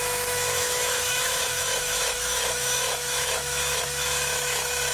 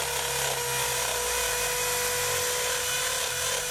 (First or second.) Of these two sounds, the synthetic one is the first